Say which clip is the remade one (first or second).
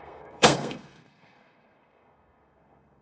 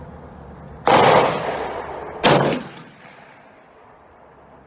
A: first